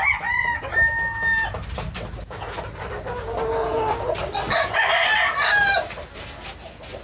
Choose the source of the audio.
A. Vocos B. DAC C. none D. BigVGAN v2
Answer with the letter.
C